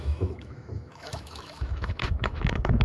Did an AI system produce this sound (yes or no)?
yes